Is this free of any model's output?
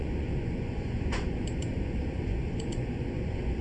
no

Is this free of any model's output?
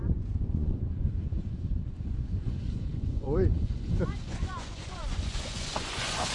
no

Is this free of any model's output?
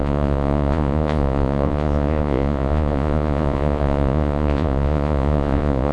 no